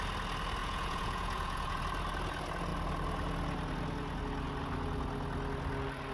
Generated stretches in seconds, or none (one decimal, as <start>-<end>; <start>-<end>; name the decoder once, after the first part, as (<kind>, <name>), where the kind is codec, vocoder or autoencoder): 0.6-1.8 (vocoder, Vocos)